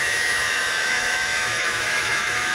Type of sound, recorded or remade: remade